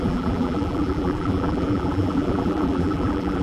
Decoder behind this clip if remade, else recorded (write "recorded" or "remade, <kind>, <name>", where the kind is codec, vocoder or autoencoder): remade, vocoder, BigVGAN v2